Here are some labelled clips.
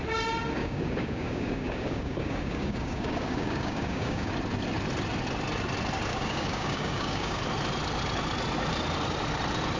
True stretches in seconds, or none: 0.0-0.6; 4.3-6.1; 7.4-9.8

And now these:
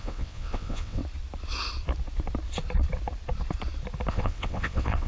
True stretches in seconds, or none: 1.0-4.1

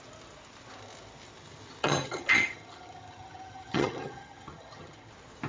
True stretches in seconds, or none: 0.0-1.8; 5.1-5.5

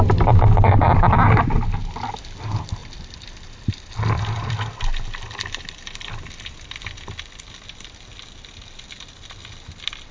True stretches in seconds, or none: 0.0-10.1

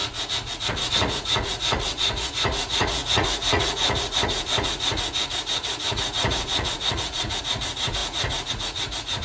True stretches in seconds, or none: none

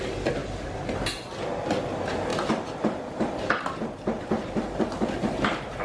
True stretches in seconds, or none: 0.0-0.4; 1.0-2.3

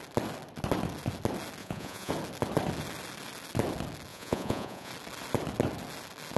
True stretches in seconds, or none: 0.0-1.6; 2.1-4.1; 4.9-6.4

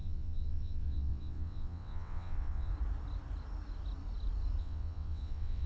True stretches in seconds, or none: 2.7-4.6